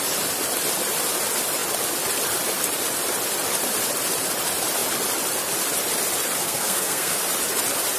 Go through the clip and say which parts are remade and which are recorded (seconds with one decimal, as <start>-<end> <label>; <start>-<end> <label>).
0.0-6.4 recorded; 6.4-7.2 remade; 7.2-8.0 recorded